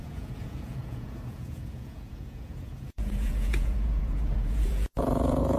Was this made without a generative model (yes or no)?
no